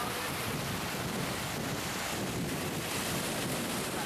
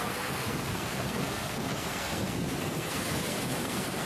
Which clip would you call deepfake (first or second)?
second